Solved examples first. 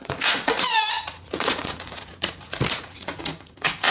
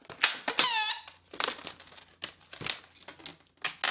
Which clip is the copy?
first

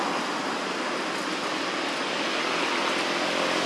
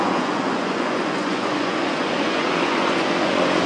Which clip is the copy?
second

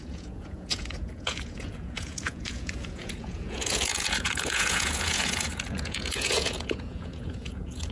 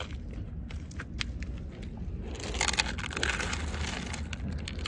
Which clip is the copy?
first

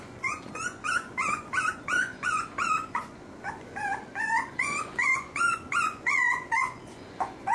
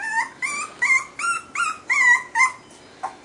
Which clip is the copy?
first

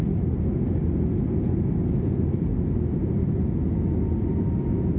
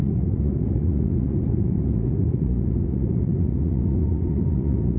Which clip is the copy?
second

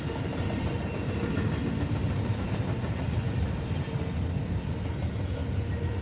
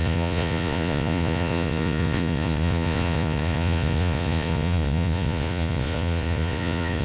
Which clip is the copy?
second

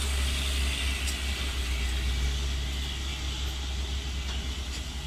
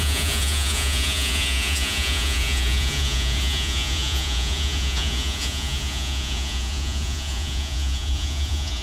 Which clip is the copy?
second